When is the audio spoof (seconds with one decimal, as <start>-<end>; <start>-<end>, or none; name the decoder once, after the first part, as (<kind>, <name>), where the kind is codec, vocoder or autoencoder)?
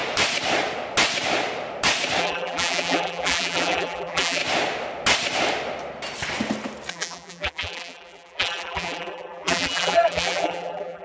2.2-4.4 (vocoder, BigVGAN v2); 6.9-11.0